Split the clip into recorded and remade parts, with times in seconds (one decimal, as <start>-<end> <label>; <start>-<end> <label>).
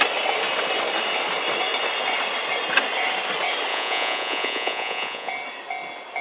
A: 0.0-3.7 recorded; 3.7-5.3 remade; 5.3-6.2 recorded